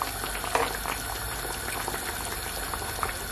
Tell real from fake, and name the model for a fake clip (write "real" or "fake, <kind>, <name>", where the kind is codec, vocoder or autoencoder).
real